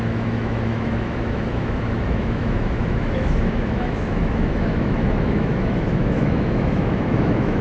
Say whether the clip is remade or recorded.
remade